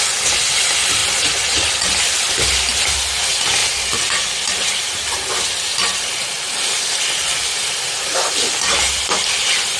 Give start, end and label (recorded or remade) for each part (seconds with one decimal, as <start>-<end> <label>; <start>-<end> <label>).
0.0-1.0 remade; 1.0-2.0 recorded; 2.0-9.8 remade